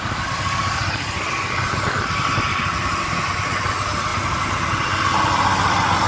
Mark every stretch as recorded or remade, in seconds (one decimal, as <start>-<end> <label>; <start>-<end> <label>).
0.0-6.1 recorded